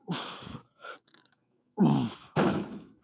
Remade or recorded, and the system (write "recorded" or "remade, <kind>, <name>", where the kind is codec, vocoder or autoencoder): remade, autoencoder, DAC-VAE